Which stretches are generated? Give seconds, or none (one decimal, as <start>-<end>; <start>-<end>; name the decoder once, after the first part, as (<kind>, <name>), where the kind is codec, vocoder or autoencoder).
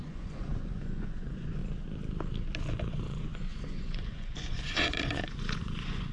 0.0-1.6 (vocoder, Vocos); 2.9-6.1